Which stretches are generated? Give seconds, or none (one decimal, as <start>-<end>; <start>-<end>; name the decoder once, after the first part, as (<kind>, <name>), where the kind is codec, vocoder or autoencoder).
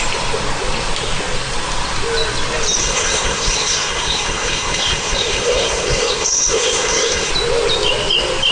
2.8-7.3 (codec, SNAC)